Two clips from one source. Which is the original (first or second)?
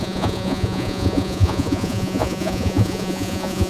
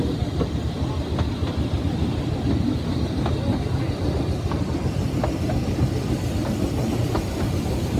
second